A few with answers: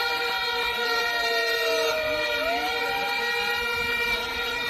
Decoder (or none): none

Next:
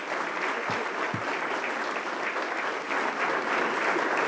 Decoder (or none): none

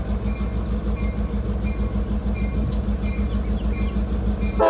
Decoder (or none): none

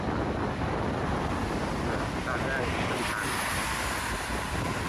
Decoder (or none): none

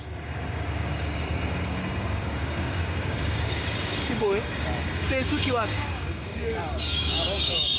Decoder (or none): codec, DAC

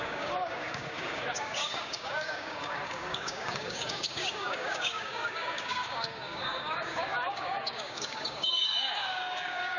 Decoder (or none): codec, DAC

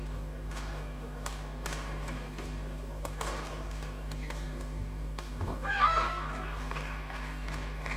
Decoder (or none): codec, DAC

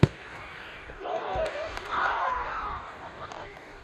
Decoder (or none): codec, DAC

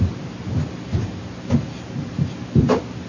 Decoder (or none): none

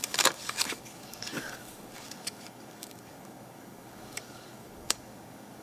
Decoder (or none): codec, DAC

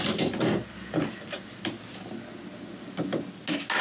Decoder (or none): none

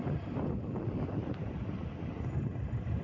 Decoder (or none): none